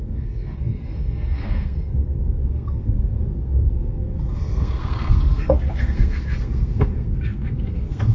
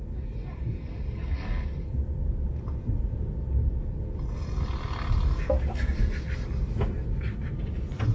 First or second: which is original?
second